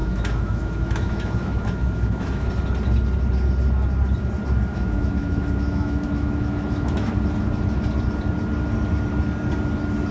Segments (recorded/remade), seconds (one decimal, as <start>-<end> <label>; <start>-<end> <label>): 0.0-2.5 remade; 2.5-4.7 recorded; 4.7-7.1 remade; 7.1-10.1 recorded